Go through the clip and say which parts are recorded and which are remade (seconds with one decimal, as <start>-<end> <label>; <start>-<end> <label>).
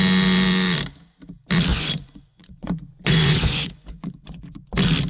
0.0-1.7 recorded; 1.7-4.6 remade; 4.6-5.1 recorded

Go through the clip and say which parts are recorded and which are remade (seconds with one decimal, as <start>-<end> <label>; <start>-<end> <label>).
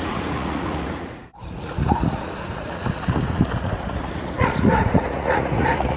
0.0-6.0 remade